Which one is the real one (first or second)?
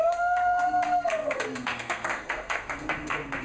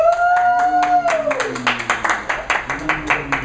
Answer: second